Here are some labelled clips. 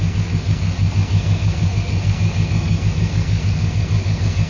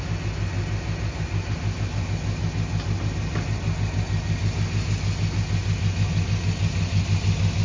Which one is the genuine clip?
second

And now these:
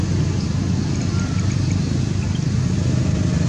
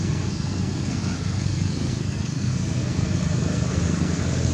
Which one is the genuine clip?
first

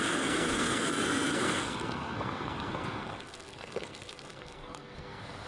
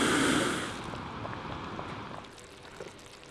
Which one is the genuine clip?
second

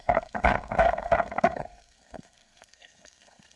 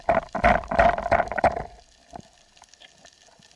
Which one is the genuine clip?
second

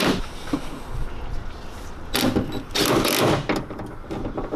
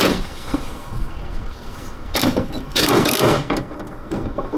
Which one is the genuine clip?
first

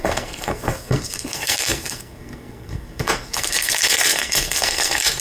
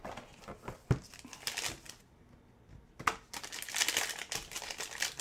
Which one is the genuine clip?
second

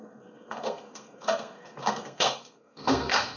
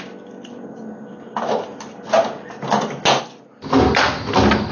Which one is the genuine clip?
second